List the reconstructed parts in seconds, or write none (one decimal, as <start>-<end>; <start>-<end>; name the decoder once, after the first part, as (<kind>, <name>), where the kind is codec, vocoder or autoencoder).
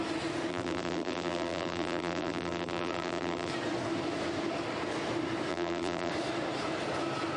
0.5-3.5 (vocoder, BigVGAN v2); 5.5-6.1